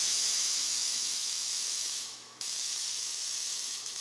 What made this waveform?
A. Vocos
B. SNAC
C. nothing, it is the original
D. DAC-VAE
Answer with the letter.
D